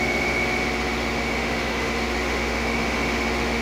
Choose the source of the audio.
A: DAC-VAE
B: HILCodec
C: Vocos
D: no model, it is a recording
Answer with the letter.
A